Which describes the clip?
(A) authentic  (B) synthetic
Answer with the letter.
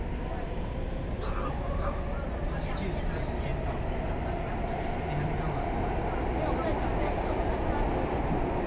A